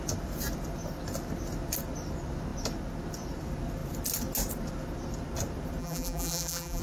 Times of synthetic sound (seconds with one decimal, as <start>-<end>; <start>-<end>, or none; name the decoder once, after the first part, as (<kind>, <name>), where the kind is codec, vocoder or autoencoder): 5.8-6.8 (vocoder, BigVGAN v2)